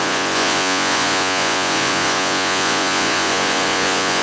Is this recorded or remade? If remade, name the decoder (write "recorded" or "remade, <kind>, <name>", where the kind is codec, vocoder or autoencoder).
remade, vocoder, Vocos